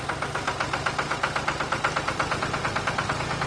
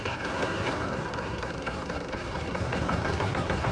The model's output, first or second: second